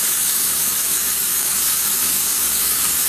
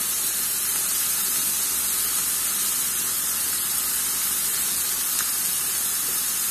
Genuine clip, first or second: second